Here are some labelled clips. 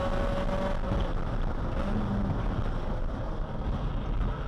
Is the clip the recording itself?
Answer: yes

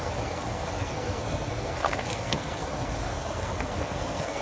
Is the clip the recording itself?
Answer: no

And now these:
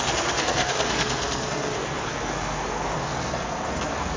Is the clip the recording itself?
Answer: no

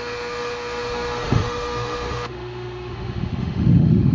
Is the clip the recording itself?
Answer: no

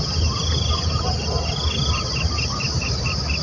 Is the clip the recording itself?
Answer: yes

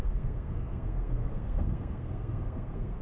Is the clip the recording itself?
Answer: no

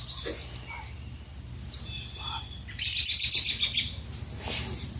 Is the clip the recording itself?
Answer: yes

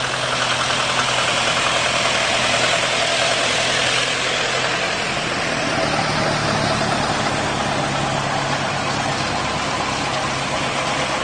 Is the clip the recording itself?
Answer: yes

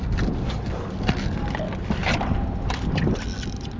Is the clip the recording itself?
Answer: yes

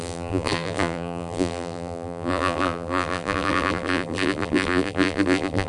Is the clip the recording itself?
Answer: no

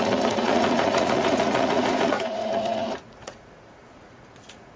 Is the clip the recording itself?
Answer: no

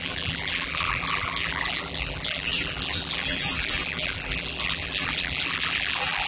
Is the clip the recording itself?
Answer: no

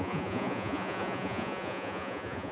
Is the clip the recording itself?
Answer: no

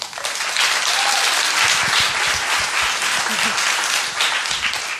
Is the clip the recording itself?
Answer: yes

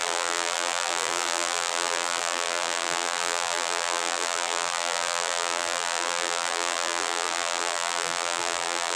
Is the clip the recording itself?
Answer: no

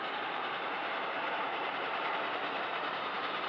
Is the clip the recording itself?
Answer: no